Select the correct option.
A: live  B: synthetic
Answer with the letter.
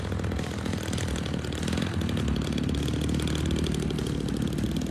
A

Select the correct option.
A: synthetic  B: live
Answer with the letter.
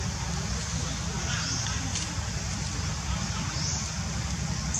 B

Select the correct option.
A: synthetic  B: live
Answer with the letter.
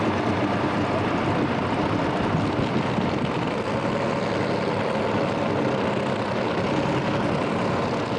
B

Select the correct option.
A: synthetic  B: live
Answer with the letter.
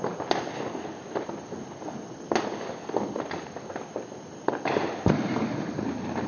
B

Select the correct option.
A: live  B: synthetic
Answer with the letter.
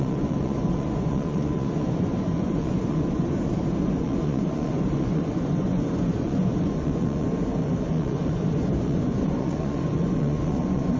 B